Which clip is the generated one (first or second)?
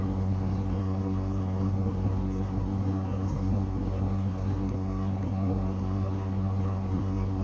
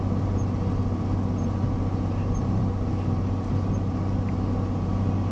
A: first